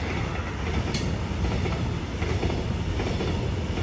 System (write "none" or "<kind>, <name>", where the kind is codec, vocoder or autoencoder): none